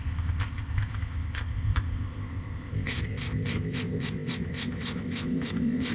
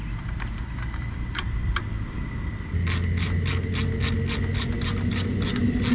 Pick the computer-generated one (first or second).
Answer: first